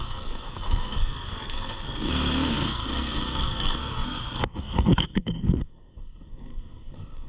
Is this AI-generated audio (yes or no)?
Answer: yes